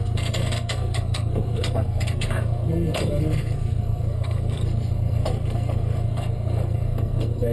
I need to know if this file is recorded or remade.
remade